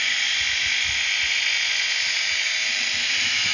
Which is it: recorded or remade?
recorded